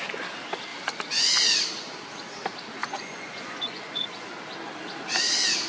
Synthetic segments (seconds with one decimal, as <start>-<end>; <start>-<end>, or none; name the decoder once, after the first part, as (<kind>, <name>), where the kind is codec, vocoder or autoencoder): 2.8-4.4 (vocoder, Vocos)

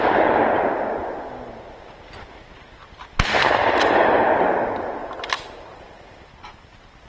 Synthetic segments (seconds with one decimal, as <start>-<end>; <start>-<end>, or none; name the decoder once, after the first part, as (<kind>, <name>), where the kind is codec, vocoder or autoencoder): 3.4-4.3 (vocoder, BigVGAN v2); 5.0-6.3